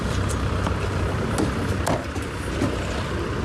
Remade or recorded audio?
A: recorded